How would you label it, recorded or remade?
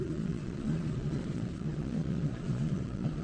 remade